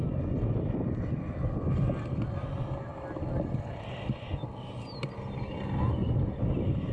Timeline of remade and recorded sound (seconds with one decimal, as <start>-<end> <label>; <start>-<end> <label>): 0.0-6.9 recorded